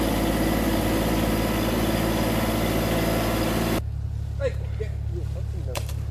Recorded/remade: recorded